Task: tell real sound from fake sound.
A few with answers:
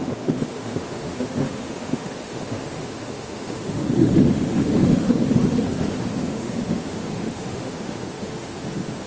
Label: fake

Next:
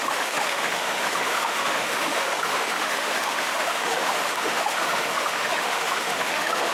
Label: fake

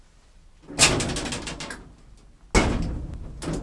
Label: real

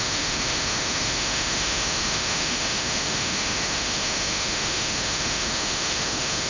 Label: fake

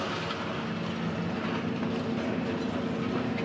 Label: real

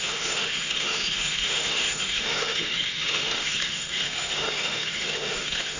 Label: fake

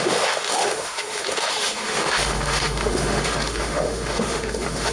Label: fake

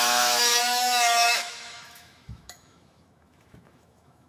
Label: fake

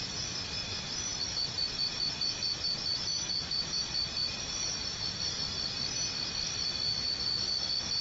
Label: real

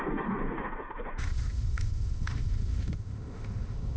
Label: fake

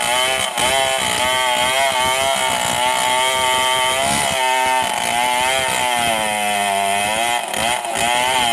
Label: real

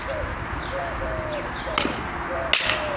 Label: real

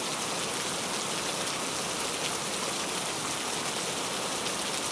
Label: real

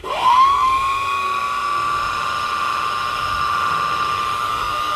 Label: fake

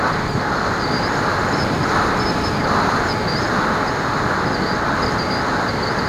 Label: real